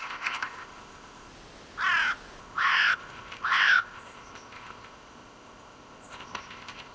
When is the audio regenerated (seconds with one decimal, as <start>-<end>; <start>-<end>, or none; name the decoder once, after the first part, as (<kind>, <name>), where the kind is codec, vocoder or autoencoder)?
0.0-1.3 (codec, ZipCodec); 2.4-6.9